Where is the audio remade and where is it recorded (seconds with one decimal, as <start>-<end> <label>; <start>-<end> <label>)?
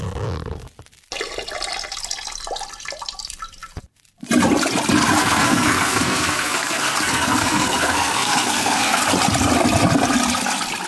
0.0-5.2 recorded; 5.2-9.0 remade; 9.0-10.9 recorded